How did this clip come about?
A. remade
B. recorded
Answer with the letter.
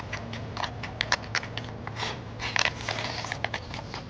B